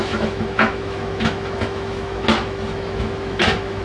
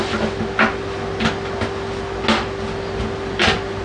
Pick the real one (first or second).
second